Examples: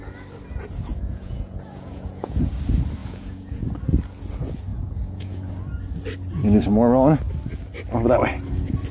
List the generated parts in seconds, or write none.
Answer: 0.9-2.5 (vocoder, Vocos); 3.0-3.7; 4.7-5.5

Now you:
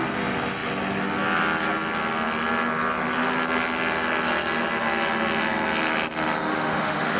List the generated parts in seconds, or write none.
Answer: 6.5-7.2 (autoencoder, DAC-VAE)

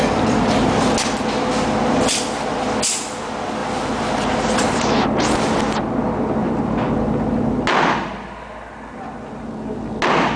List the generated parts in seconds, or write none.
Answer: 3.6-5.4 (vocoder, BigVGAN v2); 6.4-7.0

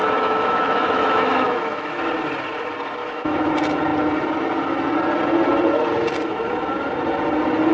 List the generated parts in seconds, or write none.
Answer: 0.0-2.0 (autoencoder, DAC-VAE); 3.0-3.5

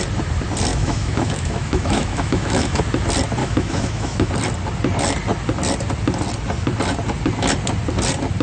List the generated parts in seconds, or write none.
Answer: 0.7-2.8 (autoencoder, DAC-VAE); 3.4-4.3